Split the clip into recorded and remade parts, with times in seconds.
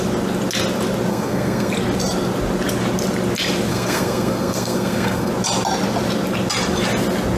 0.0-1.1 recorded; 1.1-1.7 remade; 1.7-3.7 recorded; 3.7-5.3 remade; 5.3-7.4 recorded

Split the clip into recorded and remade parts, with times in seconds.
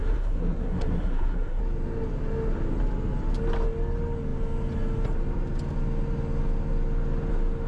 0.0-1.6 remade; 1.6-7.7 recorded